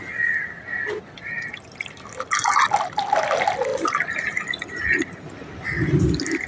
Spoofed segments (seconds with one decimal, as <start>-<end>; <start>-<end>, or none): none